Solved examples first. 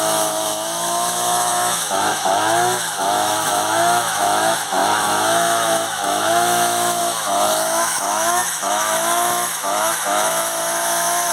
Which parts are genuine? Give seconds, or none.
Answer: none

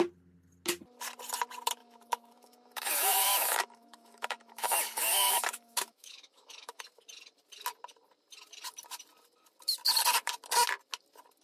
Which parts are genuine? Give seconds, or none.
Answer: 0.0-1.8; 6.8-11.4